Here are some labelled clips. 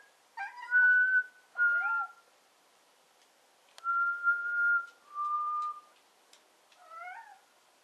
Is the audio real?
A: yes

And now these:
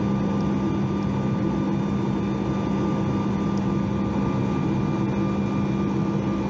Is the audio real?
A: yes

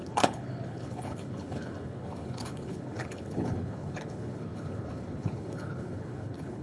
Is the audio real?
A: no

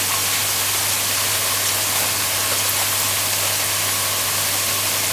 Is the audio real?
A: yes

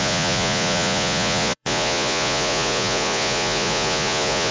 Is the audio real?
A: no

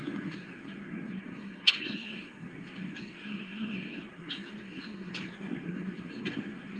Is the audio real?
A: no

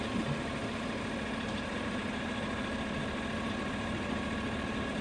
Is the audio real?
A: yes